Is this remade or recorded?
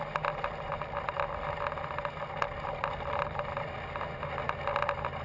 recorded